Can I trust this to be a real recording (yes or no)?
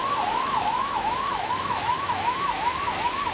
no